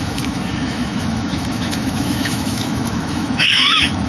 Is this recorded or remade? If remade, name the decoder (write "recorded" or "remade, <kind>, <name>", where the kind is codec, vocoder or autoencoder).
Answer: remade, autoencoder, DAC-VAE